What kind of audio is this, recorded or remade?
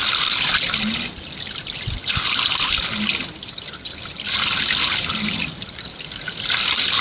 recorded